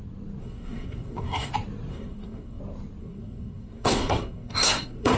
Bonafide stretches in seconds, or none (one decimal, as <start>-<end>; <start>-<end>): 0.0-0.4; 1.5-1.9; 2.6-3.0